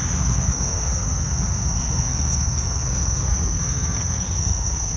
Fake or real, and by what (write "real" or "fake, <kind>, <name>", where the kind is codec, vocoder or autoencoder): fake, codec, SNAC